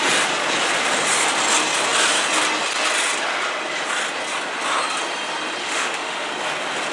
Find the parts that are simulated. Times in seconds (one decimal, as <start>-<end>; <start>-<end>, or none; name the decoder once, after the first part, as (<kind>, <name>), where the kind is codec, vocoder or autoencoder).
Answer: 5.6-6.3 (autoencoder, DAC-VAE)